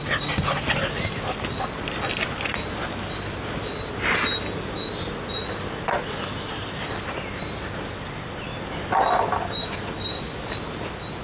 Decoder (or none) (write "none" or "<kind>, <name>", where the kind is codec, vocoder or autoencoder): none